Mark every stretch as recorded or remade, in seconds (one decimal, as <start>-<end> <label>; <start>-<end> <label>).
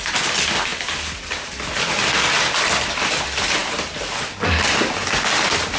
0.0-5.8 recorded